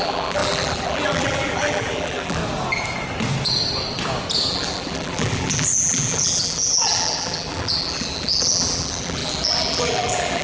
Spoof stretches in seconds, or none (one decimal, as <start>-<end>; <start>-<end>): 0.0-2.4; 4.5-10.4